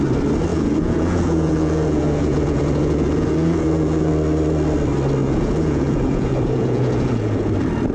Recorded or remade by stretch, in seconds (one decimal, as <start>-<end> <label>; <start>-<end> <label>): 0.0-0.5 recorded; 0.5-4.1 remade; 4.1-5.2 recorded; 5.2-7.5 remade; 7.5-7.9 recorded